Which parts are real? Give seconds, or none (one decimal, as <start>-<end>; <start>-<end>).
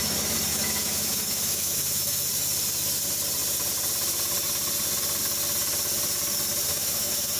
0.0-0.5; 2.3-6.7